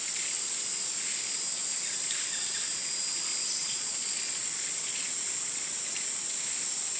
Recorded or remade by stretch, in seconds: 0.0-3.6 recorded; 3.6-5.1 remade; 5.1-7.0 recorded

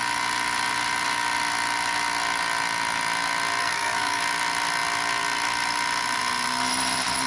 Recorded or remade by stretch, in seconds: 0.0-3.6 recorded; 3.6-4.2 remade; 4.2-7.3 recorded

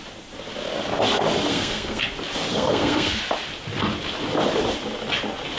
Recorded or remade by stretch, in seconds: 0.0-1.5 recorded; 1.5-2.0 remade; 2.0-2.5 recorded; 2.5-3.2 remade; 3.2-5.6 recorded

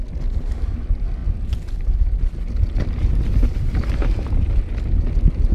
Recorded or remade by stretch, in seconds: 0.0-5.5 recorded